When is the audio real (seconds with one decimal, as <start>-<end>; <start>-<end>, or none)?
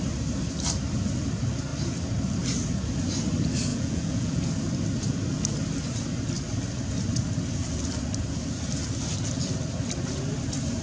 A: 0.0-3.7; 4.4-10.8